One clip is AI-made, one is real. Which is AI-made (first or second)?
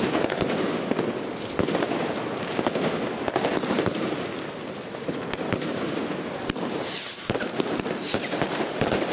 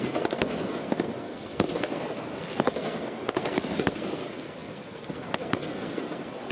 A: second